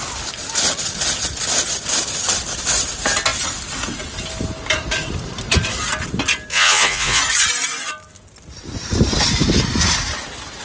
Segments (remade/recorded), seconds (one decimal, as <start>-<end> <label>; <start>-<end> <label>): 0.0-6.5 recorded; 6.5-7.2 remade; 7.2-10.6 recorded